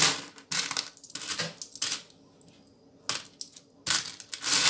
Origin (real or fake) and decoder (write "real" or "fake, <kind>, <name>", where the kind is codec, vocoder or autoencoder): real